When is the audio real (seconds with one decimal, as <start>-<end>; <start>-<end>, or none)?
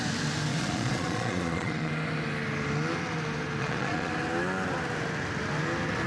0.0-0.5; 1.9-3.6; 4.1-6.1